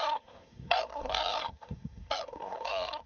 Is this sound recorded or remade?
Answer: remade